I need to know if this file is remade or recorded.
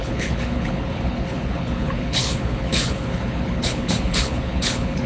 remade